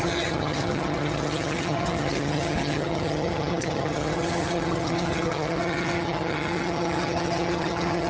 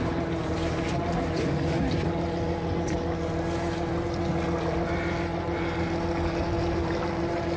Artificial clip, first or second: first